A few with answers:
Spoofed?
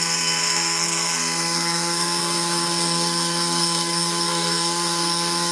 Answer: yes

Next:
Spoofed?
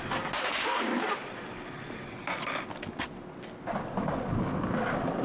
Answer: no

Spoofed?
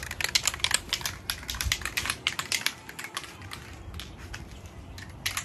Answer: no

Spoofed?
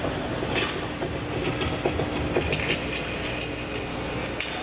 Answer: no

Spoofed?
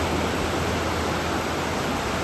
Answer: no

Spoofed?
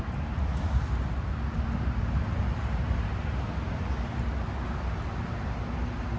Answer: no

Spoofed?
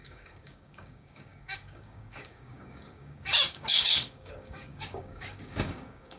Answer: yes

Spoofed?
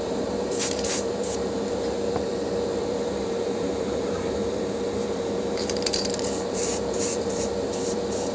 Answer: yes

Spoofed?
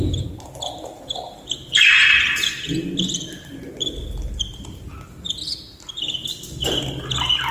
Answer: no